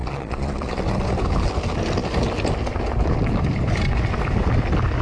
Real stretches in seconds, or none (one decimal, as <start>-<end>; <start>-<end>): 0.8-5.0